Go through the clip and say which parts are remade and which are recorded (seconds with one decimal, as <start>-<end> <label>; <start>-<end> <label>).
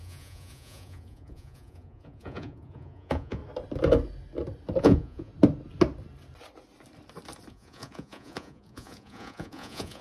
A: 0.0-3.4 remade; 3.4-4.8 recorded; 4.8-5.3 remade; 5.3-7.5 recorded; 7.5-10.0 remade